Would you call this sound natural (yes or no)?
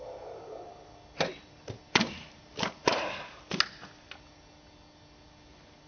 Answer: yes